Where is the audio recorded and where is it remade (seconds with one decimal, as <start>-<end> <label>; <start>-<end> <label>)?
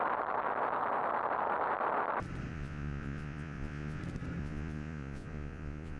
0.0-2.5 recorded; 2.5-4.0 remade; 4.0-4.4 recorded; 4.4-6.0 remade